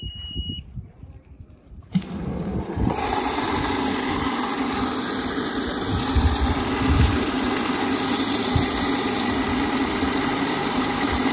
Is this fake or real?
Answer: fake